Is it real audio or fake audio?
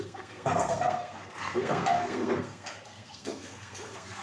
fake